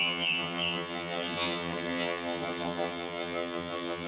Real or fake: fake